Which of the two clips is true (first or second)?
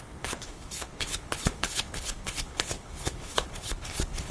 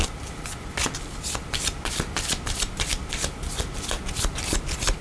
second